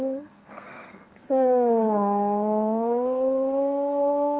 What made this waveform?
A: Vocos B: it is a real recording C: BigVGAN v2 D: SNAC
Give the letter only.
D